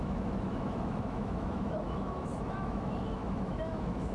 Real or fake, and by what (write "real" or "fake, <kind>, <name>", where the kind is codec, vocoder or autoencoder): fake, autoencoder, DAC-VAE